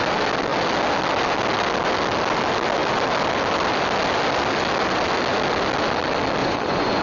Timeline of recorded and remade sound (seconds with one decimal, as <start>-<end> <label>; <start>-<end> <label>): 0.0-6.4 recorded; 6.4-7.0 remade

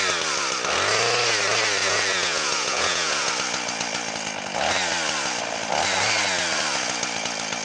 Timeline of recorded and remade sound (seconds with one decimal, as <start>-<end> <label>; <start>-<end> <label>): 0.0-1.8 recorded; 1.8-3.3 remade; 3.3-7.6 recorded

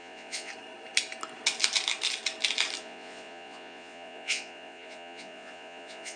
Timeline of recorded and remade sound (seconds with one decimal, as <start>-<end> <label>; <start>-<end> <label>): 0.0-0.5 remade; 0.5-2.8 recorded; 2.8-6.2 remade